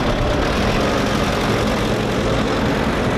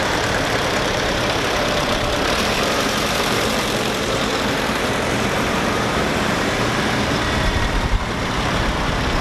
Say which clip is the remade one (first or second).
second